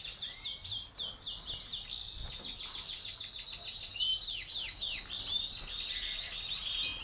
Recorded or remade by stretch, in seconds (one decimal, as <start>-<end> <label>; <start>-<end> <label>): 0.0-7.0 recorded